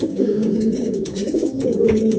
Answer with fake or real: fake